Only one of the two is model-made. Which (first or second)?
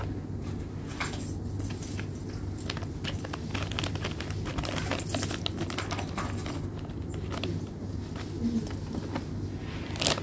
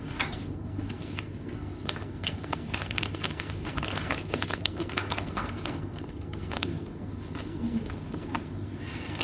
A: second